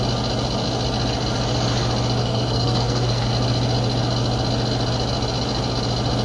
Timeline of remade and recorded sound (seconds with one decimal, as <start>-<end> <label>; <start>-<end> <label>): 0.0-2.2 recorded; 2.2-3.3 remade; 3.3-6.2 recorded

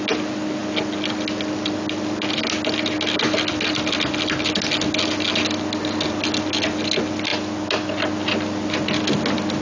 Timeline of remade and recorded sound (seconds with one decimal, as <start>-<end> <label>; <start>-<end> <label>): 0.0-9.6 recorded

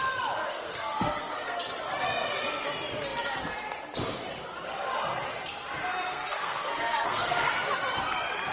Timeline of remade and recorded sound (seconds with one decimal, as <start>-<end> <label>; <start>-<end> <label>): 0.0-0.5 recorded; 0.5-1.6 remade; 1.6-6.1 recorded; 6.1-7.5 remade; 7.5-8.5 recorded

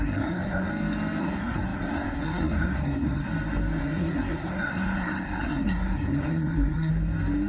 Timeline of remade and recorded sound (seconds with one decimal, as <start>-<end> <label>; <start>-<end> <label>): 0.0-0.7 remade; 0.7-1.2 recorded; 1.2-3.3 remade; 3.3-3.8 recorded; 3.8-6.9 remade; 6.9-7.5 recorded